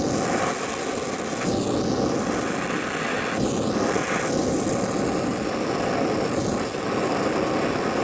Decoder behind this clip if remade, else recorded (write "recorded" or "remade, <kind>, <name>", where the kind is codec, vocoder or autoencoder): recorded